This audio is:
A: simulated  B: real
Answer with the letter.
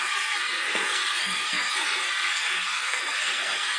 A